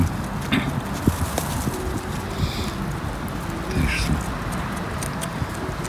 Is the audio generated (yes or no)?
no